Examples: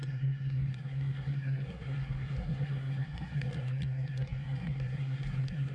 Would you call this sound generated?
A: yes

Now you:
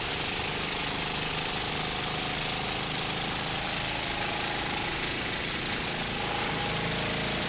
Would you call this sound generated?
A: no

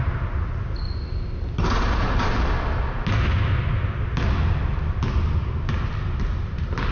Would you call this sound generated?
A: no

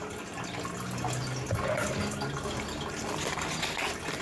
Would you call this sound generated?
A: no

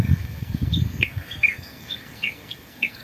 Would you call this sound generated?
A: yes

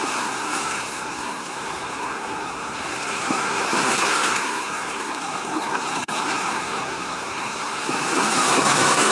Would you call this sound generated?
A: yes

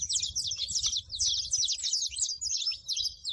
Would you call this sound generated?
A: no